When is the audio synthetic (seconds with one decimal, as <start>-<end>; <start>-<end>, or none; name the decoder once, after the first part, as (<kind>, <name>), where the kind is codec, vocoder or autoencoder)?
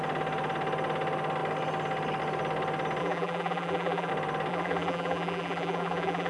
3.0-4.1 (vocoder, BigVGAN v2); 4.5-6.3